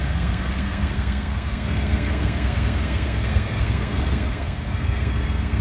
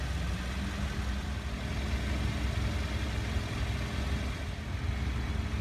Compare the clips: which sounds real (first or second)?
second